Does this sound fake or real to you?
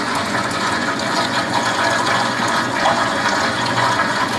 fake